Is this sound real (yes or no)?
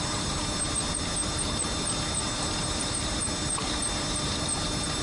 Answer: no